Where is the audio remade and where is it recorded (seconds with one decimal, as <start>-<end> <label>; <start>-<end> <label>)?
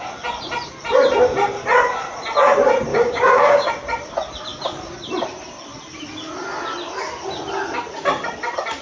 0.0-2.9 recorded; 2.9-3.7 remade; 3.7-8.8 recorded